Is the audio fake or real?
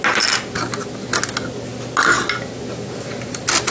real